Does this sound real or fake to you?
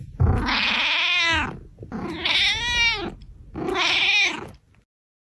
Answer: real